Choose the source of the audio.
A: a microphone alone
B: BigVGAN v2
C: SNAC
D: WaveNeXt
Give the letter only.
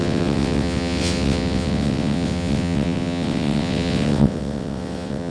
D